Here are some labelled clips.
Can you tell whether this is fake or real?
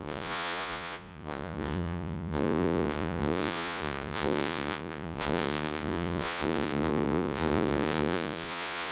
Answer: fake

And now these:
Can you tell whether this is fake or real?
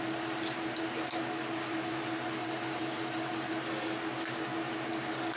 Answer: real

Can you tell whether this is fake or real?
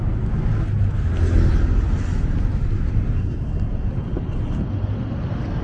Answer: real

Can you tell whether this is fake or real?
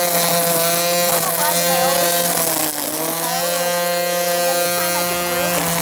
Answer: real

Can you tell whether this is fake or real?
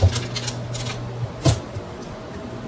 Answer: real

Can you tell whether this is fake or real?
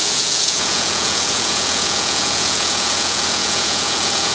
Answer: fake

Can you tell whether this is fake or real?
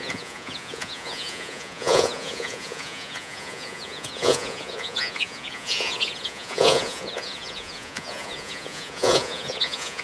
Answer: fake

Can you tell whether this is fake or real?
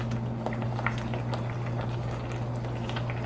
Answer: real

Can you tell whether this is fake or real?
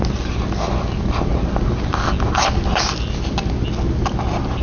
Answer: real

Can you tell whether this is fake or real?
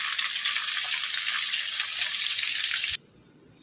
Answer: real